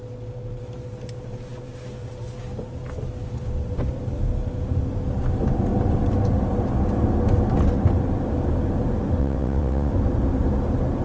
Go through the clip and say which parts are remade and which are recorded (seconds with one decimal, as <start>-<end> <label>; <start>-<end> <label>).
0.0-9.2 recorded; 9.2-9.9 remade; 9.9-11.0 recorded